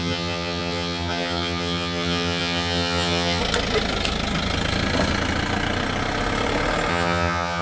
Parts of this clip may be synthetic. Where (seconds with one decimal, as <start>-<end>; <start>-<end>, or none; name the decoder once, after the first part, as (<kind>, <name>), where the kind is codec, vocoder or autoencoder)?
0.0-3.4 (vocoder, HiFi-GAN); 6.9-7.6